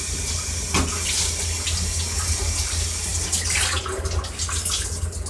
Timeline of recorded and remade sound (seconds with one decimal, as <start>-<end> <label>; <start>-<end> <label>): 0.0-5.3 recorded